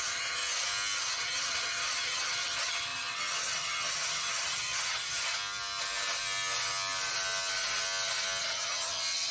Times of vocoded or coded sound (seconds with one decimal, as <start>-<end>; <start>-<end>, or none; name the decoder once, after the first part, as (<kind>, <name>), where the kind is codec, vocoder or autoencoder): 0.0-0.4 (vocoder, HiFi-GAN); 1.1-5.3; 8.4-9.3